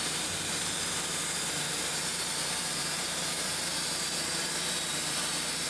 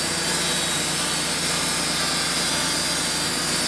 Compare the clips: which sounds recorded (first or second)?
second